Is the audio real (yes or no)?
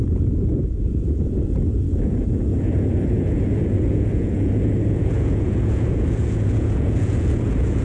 no